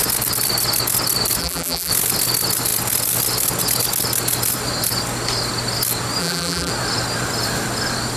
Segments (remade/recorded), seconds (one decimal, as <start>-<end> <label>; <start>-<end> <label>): 0.0-1.4 recorded; 1.4-1.9 remade; 1.9-6.2 recorded; 6.2-6.7 remade; 6.7-8.2 recorded